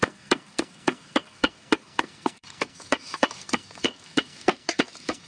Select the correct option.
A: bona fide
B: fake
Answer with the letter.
B